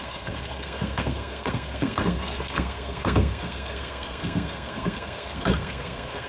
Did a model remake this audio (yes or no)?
yes